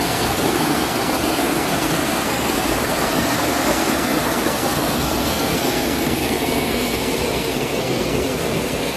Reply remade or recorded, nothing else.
remade